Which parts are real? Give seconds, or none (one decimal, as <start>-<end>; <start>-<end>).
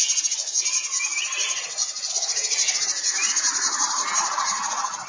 0.0-0.9; 4.0-5.1